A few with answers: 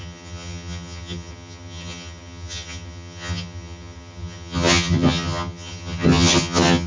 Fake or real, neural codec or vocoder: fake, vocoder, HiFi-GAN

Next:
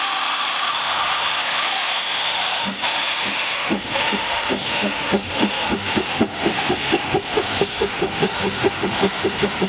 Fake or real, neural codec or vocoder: fake, autoencoder, DAC-VAE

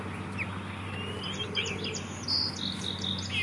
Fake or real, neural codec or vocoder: real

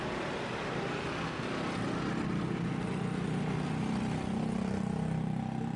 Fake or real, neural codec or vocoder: real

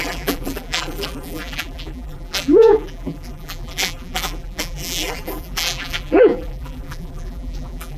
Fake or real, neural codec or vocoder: fake, vocoder, BigVGAN v2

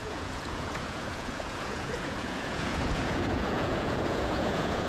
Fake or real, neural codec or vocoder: fake, vocoder, Vocos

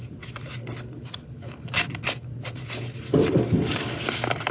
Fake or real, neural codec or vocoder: real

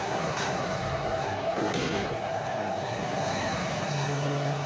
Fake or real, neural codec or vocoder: fake, codec, SNAC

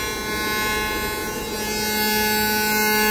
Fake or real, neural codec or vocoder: real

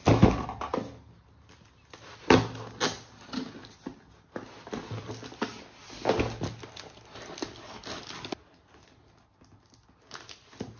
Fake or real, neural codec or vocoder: real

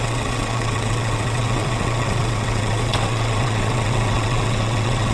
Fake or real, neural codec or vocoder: fake, vocoder, WaveNeXt